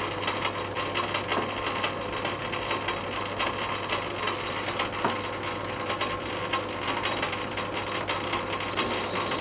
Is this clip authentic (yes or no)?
yes